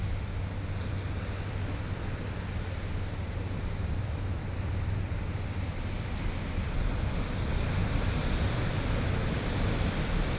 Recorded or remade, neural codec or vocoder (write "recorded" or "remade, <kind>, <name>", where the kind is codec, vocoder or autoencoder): recorded